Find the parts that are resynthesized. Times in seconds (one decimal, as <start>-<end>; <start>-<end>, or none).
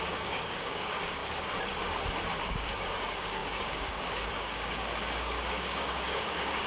0.0-1.2; 2.4-6.7